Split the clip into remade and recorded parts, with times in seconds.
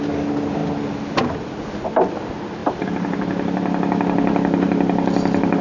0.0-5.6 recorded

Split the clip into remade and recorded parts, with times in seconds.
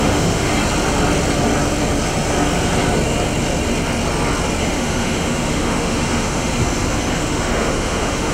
0.0-0.5 remade; 0.5-4.6 recorded; 4.6-6.5 remade; 6.5-7.1 recorded; 7.1-8.3 remade